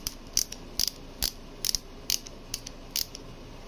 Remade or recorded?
recorded